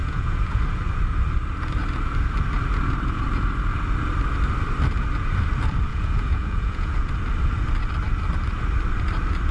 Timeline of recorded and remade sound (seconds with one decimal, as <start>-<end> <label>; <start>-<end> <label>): 0.0-0.6 remade; 0.6-5.9 recorded; 5.9-7.1 remade; 7.1-9.5 recorded